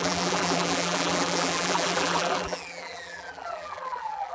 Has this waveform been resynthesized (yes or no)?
yes